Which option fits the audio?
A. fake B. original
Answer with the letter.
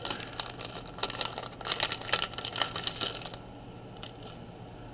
B